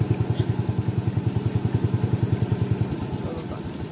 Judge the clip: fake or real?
real